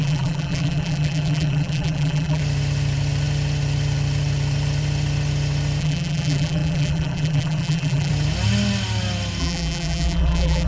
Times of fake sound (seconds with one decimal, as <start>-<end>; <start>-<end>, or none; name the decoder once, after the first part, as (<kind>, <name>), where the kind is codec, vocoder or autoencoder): 0.0-2.4 (vocoder, BigVGAN v2); 5.8-8.1; 9.4-10.7